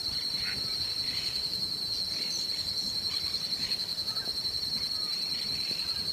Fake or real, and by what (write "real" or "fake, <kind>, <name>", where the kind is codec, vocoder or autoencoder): real